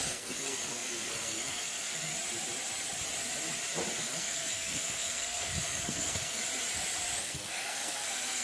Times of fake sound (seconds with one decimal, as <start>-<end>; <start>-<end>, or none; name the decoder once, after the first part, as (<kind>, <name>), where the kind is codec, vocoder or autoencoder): 0.0-2.1 (codec, SNAC); 4.0-6.4; 7.2-8.4

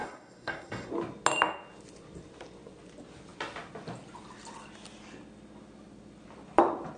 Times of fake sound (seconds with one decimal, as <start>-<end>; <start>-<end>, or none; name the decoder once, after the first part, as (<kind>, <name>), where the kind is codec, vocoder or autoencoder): 0.0-0.9 (codec, SNAC)

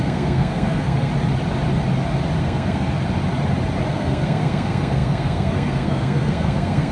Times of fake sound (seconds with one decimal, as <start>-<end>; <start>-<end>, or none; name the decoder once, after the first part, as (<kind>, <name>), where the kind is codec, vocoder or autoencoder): 0.0-1.1 (codec, SNAC); 2.4-2.9; 3.9-6.9

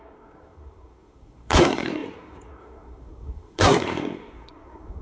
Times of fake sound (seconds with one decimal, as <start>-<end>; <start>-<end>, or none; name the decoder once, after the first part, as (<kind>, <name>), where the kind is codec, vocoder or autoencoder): 0.0-5.0 (codec, SNAC)

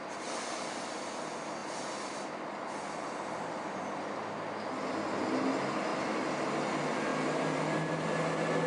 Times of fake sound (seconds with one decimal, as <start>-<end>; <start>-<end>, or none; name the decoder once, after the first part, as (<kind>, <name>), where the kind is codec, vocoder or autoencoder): none